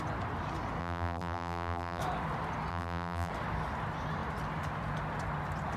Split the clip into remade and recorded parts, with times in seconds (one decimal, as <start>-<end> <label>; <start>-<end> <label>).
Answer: 0.0-0.8 recorded; 0.8-2.0 remade; 2.0-2.7 recorded; 2.7-3.3 remade; 3.3-5.8 recorded